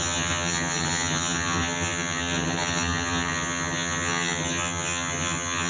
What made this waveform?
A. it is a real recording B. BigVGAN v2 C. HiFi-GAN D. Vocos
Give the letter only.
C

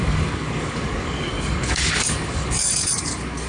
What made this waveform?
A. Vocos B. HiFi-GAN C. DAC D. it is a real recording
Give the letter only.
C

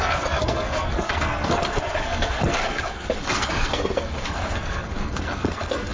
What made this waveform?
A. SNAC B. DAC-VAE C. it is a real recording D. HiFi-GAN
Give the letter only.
A